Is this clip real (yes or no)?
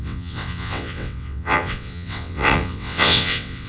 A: no